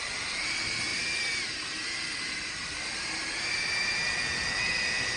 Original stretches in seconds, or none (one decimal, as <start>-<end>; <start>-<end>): 0.0-0.9; 4.0-5.2